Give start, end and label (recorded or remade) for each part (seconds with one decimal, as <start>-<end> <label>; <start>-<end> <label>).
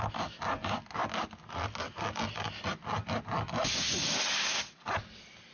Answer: 0.0-5.5 recorded